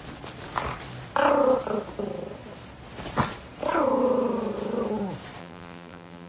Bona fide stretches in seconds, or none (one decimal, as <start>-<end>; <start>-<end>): 0.0-5.4